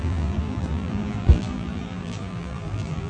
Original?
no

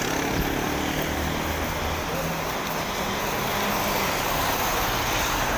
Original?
yes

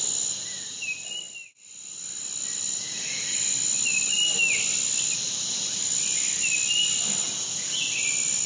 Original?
yes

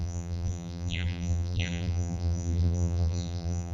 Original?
no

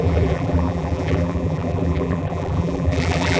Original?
no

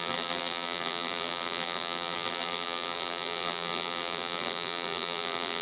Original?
no